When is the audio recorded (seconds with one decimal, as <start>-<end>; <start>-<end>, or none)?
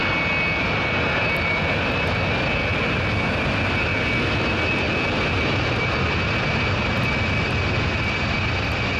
0.0-9.0